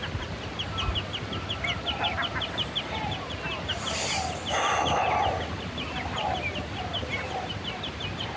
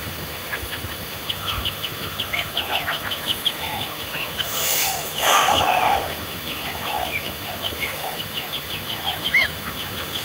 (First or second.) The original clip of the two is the first